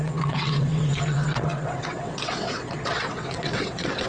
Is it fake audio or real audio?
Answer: fake